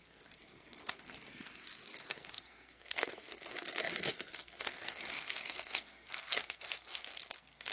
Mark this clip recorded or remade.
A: remade